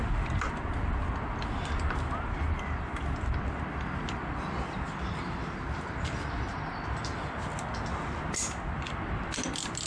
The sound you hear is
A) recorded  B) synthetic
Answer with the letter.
A